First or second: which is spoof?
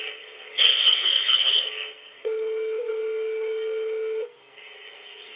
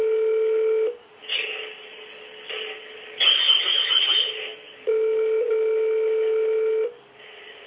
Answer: first